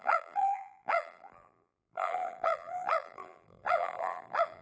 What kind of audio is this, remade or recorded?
remade